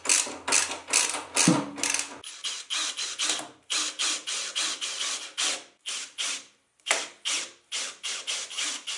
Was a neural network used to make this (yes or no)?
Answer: no